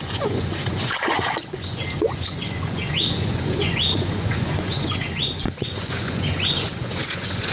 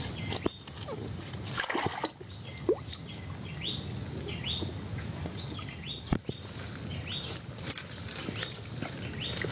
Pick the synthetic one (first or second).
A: first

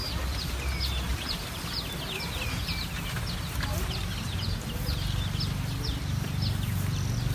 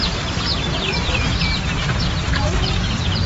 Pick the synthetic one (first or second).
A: second